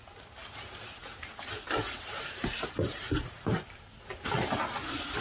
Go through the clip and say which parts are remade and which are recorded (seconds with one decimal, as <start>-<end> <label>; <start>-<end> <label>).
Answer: 0.0-0.4 recorded; 0.4-3.5 remade; 3.5-5.2 recorded